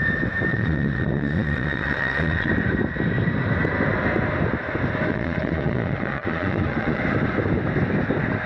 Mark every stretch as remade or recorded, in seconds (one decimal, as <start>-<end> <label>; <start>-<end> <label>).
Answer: 0.0-0.5 recorded; 0.5-2.5 remade; 2.5-5.1 recorded; 5.1-7.0 remade; 7.0-8.5 recorded